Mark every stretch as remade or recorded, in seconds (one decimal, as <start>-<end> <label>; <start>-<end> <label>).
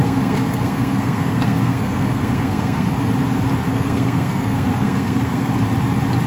0.0-2.9 remade; 2.9-3.7 recorded; 3.7-5.5 remade; 5.5-6.3 recorded